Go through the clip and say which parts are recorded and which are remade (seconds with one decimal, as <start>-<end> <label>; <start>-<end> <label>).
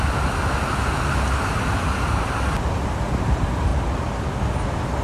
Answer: 0.0-5.0 recorded